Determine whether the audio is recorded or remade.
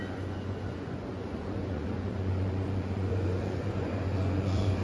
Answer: remade